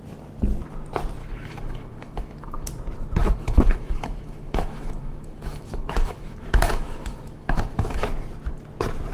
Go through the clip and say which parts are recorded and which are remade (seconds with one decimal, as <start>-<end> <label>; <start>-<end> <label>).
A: 0.0-1.2 recorded; 1.2-2.7 remade; 2.7-3.2 recorded; 3.2-8.1 remade; 8.1-9.1 recorded